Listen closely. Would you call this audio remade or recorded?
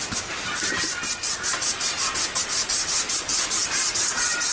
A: remade